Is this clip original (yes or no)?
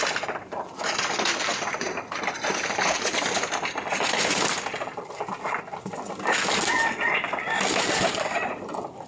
yes